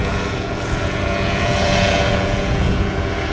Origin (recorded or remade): remade